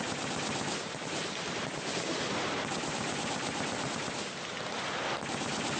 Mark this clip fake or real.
real